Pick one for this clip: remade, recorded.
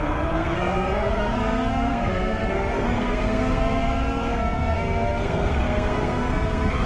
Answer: remade